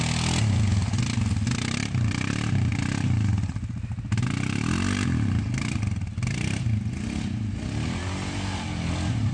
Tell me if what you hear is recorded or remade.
recorded